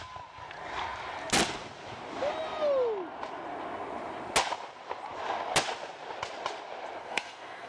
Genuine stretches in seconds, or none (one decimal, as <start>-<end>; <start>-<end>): 0.0-7.0